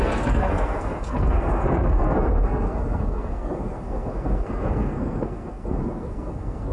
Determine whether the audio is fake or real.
fake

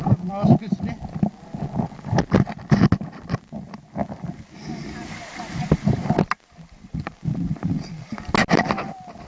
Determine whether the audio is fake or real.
real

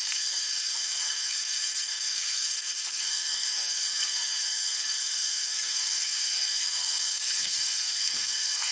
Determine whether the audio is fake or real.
fake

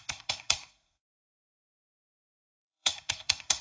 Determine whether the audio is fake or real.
fake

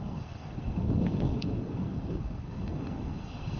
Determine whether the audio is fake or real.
fake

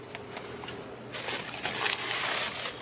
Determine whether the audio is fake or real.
real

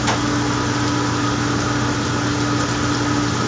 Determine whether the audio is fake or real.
real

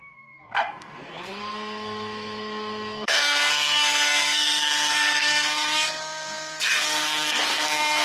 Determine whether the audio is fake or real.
fake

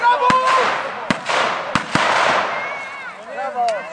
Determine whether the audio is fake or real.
real